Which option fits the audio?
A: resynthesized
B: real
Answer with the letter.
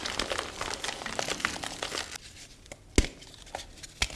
B